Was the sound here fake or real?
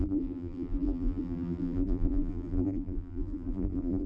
fake